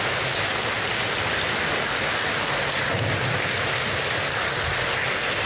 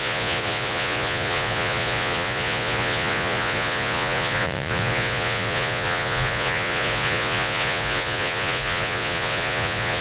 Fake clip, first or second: second